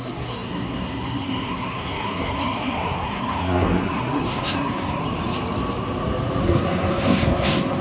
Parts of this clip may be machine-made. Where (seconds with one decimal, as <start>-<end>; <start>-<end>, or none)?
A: 0.0-5.0; 6.4-7.8